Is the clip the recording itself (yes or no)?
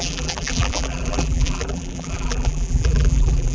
no